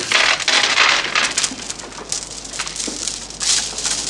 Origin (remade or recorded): recorded